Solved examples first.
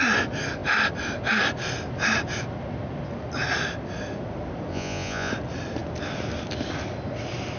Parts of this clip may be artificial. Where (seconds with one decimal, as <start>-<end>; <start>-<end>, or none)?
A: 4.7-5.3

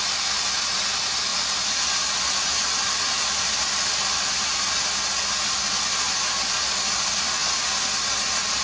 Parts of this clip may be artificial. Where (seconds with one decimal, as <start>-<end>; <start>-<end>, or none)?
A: 1.3-4.7

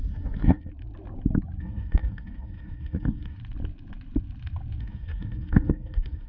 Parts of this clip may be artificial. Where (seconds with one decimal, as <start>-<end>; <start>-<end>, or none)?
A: 0.0-0.7; 1.6-3.4; 4.8-6.3

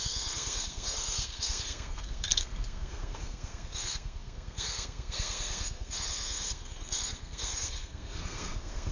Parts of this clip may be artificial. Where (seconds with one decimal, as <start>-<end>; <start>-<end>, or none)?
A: 0.0-8.9

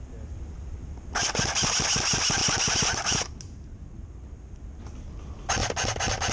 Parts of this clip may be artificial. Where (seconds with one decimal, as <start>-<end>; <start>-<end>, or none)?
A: none